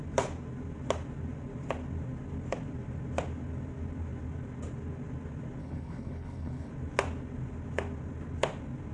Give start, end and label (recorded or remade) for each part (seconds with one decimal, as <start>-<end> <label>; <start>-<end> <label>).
0.0-5.6 recorded; 5.6-6.7 remade; 6.7-8.9 recorded